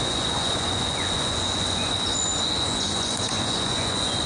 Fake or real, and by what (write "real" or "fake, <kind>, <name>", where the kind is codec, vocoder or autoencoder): fake, vocoder, Vocos